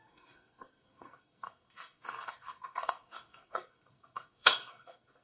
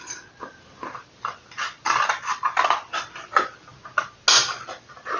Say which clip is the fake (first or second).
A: first